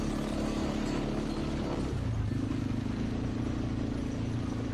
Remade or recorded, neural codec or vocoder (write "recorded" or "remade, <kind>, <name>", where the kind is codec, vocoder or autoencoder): recorded